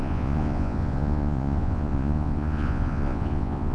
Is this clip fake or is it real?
fake